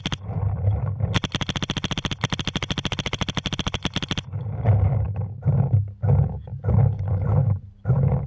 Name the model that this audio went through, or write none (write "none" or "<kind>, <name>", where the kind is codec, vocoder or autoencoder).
none